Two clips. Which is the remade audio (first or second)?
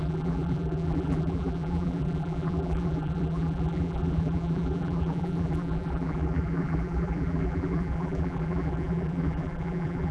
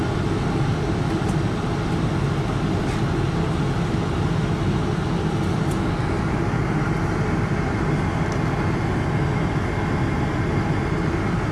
first